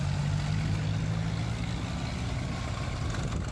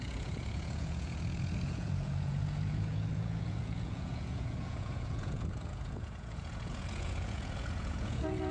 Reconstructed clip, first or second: second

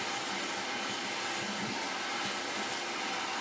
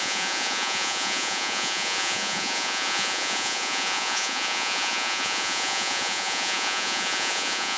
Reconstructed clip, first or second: second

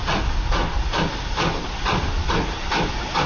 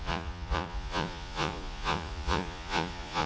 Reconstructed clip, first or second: second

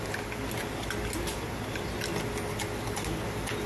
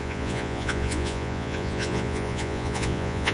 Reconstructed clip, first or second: second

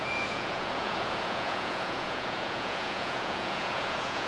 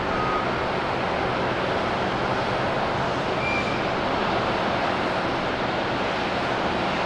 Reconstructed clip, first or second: first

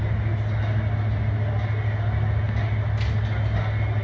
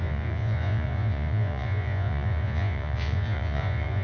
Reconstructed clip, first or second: second